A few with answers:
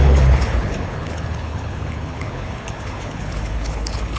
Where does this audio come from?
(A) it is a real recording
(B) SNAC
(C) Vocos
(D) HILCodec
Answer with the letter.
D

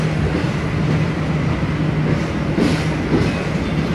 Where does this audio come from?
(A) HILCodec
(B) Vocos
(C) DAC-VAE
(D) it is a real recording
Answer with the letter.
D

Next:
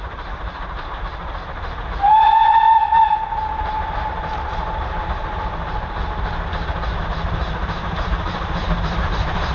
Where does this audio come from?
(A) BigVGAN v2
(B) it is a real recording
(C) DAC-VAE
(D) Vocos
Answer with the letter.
A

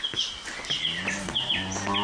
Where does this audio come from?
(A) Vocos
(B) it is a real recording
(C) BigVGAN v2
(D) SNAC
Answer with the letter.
B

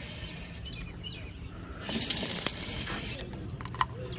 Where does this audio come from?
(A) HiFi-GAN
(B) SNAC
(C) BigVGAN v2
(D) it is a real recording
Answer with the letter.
D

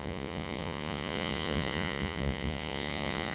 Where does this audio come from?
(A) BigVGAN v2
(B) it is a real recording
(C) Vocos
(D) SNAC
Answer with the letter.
C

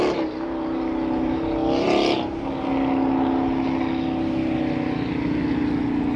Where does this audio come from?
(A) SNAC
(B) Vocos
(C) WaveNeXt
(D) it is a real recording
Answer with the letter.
D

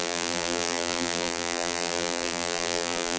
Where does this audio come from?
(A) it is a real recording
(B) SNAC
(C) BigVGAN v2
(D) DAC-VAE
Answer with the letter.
C